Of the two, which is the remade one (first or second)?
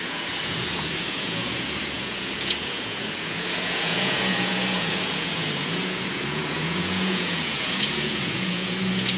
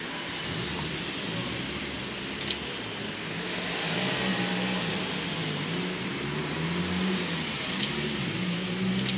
first